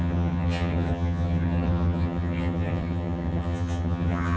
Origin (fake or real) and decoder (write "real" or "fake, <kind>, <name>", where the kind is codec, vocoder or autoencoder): fake, vocoder, HiFi-GAN